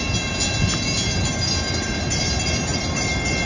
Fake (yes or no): no